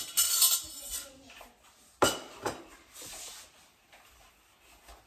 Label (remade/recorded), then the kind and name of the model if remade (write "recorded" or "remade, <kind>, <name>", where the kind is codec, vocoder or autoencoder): recorded